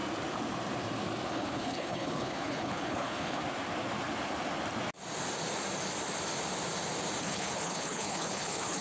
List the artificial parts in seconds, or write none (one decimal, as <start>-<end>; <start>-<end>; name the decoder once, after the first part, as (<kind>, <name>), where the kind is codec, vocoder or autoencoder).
1.3-3.4 (codec, HILCodec); 7.2-8.8